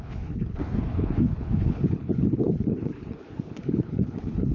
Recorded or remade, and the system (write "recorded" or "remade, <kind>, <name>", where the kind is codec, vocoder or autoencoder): remade, codec, HILCodec